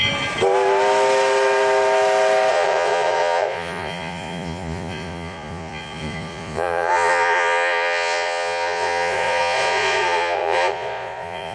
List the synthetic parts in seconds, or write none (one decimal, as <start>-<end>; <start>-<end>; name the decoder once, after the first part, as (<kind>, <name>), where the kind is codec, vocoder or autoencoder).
2.5-11.5 (vocoder, Vocos)